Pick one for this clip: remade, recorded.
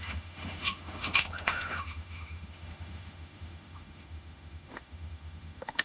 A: remade